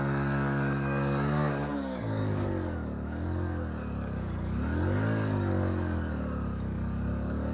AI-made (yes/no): yes